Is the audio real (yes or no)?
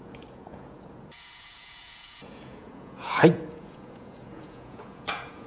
no